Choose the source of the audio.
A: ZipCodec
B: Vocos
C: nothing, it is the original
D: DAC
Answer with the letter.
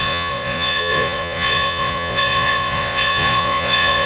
B